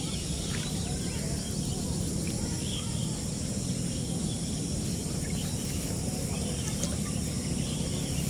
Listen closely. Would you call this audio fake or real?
real